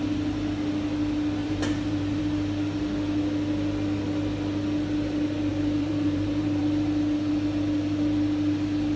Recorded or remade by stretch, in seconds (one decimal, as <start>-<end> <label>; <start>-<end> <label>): 0.0-1.4 recorded; 1.4-2.2 remade; 2.2-5.5 recorded; 5.5-6.6 remade; 6.6-9.0 recorded